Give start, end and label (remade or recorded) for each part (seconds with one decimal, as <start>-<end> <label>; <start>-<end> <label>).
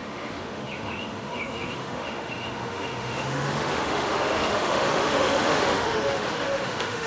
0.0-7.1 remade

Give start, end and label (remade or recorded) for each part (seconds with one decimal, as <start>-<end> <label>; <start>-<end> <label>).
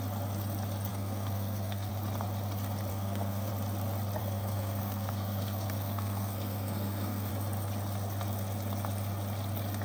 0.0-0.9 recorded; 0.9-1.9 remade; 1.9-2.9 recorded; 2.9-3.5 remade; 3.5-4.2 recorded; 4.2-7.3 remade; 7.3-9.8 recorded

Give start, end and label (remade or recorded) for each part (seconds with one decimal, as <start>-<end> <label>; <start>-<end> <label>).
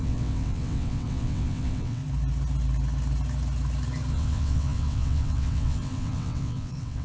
0.0-2.0 remade; 2.0-4.1 recorded; 4.1-7.0 remade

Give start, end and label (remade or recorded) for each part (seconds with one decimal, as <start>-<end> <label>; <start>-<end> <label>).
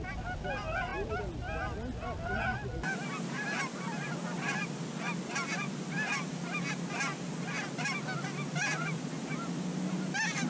0.0-10.5 recorded